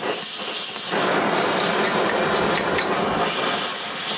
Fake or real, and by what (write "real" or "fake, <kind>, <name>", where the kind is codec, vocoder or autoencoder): real